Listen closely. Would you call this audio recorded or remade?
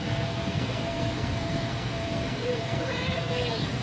remade